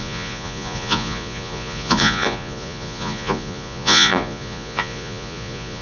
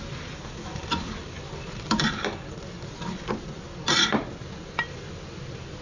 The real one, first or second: second